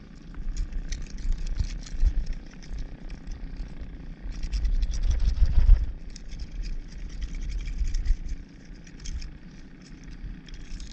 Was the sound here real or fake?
real